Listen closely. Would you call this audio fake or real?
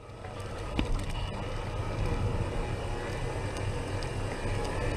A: real